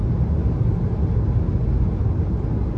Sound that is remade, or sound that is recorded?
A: recorded